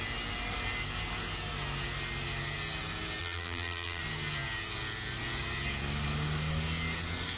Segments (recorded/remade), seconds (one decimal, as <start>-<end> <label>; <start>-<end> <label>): 0.0-3.2 recorded; 3.2-4.0 remade; 4.0-7.4 recorded